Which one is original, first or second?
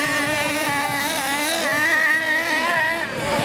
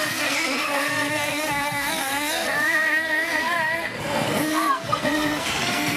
first